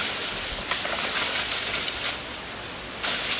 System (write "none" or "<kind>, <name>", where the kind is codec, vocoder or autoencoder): none